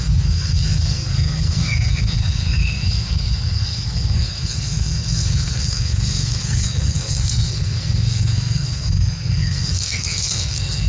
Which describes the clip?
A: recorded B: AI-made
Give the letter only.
B